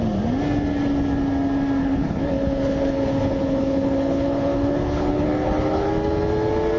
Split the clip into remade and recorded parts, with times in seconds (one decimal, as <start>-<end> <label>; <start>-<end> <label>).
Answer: 0.0-1.8 recorded; 1.8-5.9 remade; 5.9-6.8 recorded